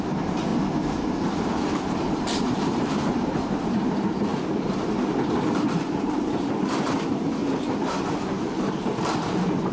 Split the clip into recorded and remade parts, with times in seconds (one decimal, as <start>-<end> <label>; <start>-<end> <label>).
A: 0.0-0.5 remade; 0.5-1.4 recorded; 1.4-4.3 remade; 4.3-5.7 recorded; 5.7-7.4 remade; 7.4-8.1 recorded; 8.1-9.7 remade